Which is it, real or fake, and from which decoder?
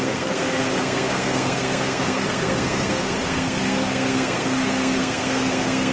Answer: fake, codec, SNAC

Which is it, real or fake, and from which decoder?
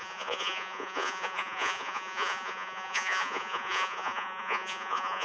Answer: fake, vocoder, Vocos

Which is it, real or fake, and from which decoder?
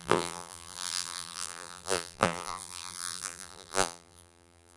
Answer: fake, vocoder, BigVGAN v2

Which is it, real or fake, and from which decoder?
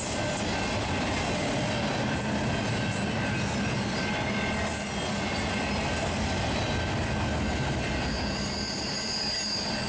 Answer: real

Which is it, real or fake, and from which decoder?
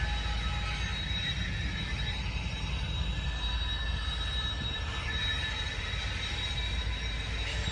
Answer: real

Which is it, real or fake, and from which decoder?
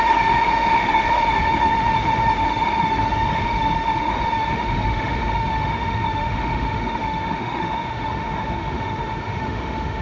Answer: fake, autoencoder, DAC-VAE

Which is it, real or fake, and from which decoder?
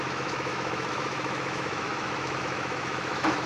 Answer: fake, autoencoder, DAC-VAE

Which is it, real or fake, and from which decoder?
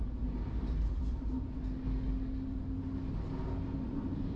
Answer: real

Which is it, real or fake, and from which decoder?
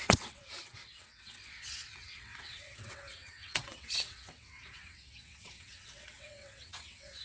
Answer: fake, vocoder, WaveNeXt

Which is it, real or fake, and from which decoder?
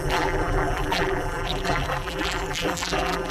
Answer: fake, vocoder, BigVGAN v2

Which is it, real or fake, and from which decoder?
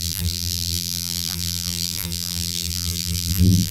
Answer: fake, vocoder, BigVGAN v2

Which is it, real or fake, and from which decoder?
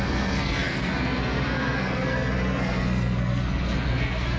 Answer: fake, codec, SNAC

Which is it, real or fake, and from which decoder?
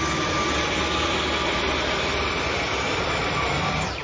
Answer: real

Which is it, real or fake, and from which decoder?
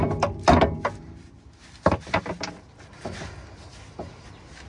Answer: real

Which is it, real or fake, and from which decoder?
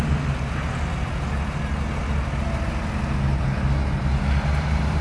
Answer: real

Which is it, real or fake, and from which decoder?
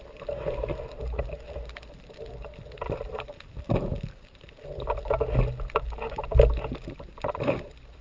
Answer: real